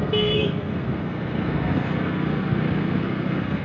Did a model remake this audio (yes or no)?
yes